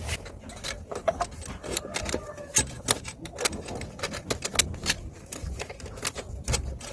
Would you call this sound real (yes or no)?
yes